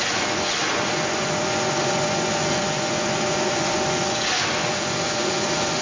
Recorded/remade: remade